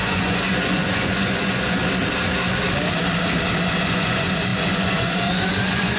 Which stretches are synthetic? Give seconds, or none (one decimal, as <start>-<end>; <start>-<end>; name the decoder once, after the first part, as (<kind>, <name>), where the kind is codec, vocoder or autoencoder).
0.0-1.8 (vocoder, Vocos); 3.8-6.0